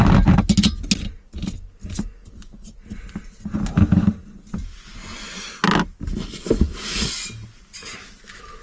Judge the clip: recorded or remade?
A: recorded